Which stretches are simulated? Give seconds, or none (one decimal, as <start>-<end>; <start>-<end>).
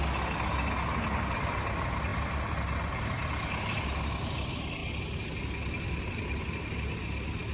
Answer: none